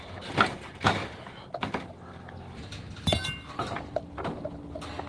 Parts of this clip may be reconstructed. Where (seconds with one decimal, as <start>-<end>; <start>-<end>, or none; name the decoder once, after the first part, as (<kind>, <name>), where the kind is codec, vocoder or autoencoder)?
none